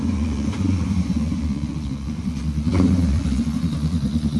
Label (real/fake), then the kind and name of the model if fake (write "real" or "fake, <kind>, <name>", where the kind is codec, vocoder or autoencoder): fake, vocoder, Vocos